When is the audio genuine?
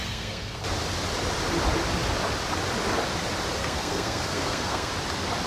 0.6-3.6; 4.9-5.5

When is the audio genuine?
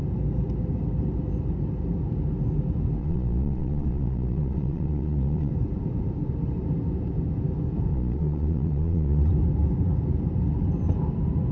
0.0-3.0; 5.5-7.9; 9.3-11.5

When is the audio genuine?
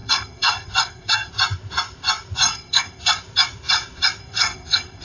1.3-2.5; 3.1-4.2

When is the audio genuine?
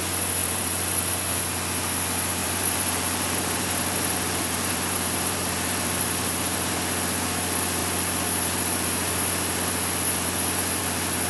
0.0-0.4; 1.1-2.4; 6.7-11.3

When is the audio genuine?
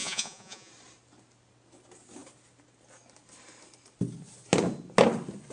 0.7-5.5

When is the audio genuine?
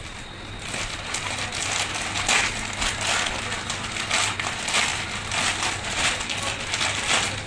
0.0-4.9; 6.8-7.5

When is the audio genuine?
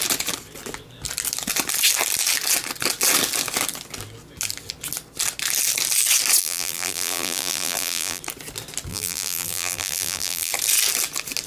0.0-6.4; 8.2-8.9; 10.5-11.5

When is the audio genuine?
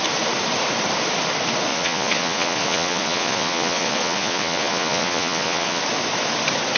0.0-1.7; 5.8-6.8